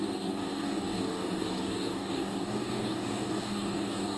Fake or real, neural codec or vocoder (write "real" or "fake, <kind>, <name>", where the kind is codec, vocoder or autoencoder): fake, codec, DAC